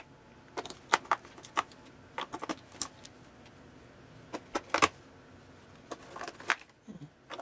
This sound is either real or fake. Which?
real